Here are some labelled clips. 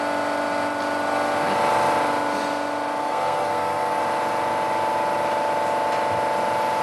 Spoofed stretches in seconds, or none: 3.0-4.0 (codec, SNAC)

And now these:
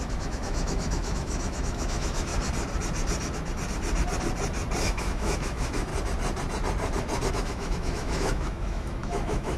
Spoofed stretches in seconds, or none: 0.0-2.3 (autoencoder, DAC-VAE); 4.8-5.9; 7.3-9.6

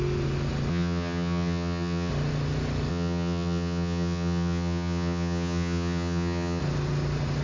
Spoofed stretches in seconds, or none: 0.7-2.1 (vocoder, HiFi-GAN); 2.9-6.6

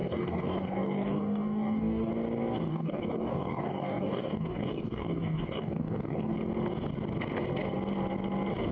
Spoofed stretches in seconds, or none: 0.0-2.1 (codec, DAC); 2.7-6.3